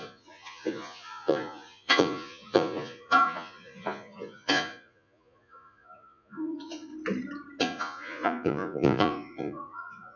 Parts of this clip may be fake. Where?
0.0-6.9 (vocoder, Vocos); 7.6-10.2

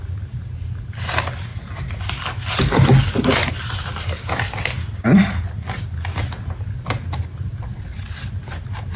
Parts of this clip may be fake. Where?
none